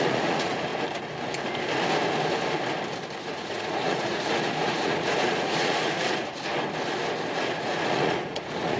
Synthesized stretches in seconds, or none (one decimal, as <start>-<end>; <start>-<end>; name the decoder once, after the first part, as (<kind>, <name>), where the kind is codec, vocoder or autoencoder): 0.0-0.7 (vocoder, Vocos); 3.2-6.5; 7.4-8.8